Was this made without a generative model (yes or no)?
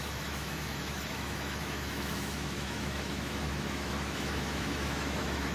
no